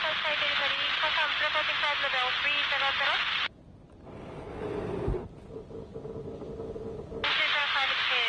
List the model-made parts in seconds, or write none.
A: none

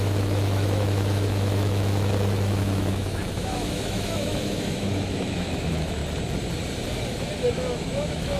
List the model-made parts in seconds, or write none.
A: 0.0-6.0 (autoencoder, DAC-VAE); 7.4-8.4